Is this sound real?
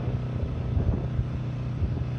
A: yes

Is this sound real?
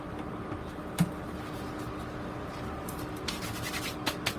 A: yes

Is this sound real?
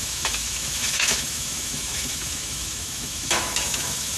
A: no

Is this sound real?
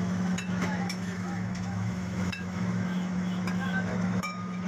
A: no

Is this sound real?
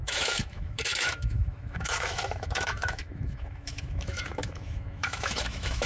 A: no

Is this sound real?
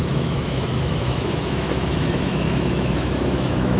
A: no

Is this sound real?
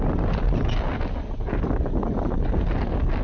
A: yes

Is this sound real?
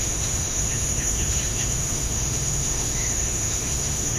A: no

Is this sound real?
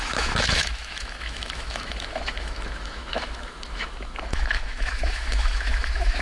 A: no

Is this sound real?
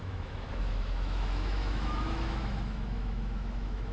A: no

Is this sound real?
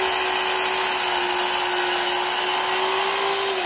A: yes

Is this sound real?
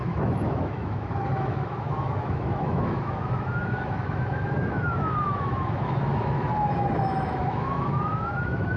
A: no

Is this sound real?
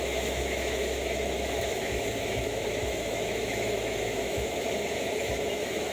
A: no